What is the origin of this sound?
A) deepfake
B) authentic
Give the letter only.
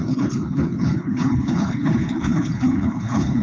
A